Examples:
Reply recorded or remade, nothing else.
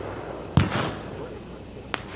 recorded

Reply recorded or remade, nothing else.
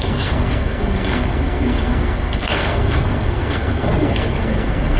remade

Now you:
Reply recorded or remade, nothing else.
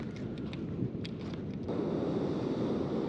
recorded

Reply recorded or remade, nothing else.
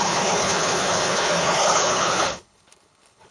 remade